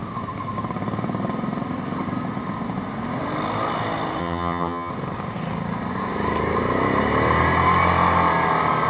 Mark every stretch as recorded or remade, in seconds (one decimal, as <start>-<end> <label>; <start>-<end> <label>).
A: 0.0-4.2 recorded; 4.2-4.9 remade; 4.9-8.9 recorded